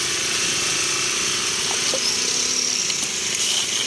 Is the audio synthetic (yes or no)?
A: no